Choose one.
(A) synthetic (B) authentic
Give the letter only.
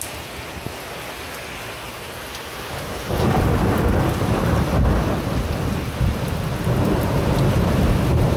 B